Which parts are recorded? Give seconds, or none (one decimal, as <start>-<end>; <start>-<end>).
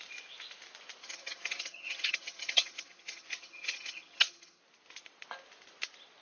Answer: 0.0-1.0; 4.6-6.2